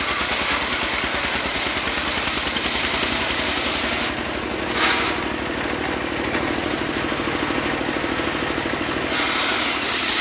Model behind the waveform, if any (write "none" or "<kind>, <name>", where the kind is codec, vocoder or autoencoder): none